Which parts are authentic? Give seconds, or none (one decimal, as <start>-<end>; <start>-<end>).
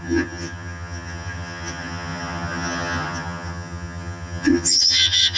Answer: none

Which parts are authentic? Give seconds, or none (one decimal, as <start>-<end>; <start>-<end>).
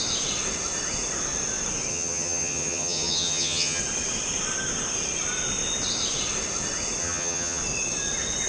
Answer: 0.0-1.9; 3.8-7.0; 7.6-8.5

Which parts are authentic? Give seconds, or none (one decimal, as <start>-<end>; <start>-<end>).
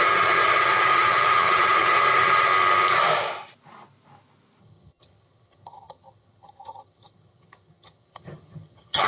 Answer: 2.5-4.6